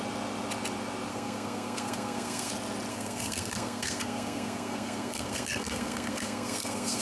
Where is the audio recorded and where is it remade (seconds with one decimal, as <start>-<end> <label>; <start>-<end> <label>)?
0.0-1.1 recorded; 1.1-2.5 remade; 2.5-2.9 recorded; 2.9-7.0 remade